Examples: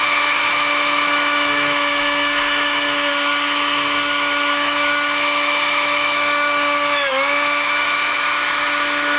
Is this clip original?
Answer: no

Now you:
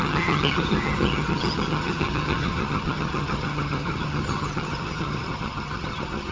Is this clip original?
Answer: no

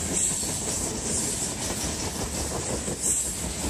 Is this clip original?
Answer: yes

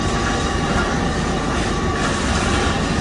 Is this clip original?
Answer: yes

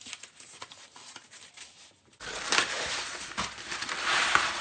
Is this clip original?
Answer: yes